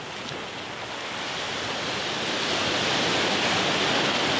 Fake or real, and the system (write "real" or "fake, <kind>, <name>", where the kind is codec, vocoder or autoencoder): real